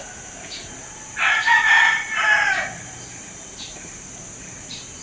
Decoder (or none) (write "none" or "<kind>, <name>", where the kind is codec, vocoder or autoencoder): vocoder, BigVGAN v2